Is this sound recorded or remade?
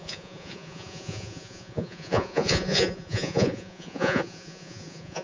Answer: remade